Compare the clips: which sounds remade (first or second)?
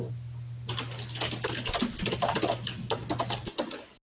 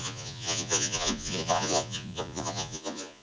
second